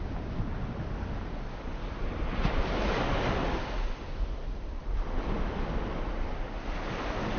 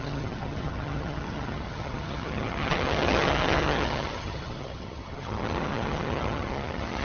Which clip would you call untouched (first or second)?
first